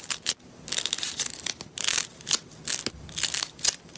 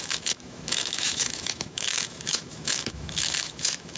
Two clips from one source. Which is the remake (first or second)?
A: second